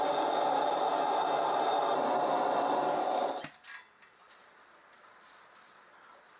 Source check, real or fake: real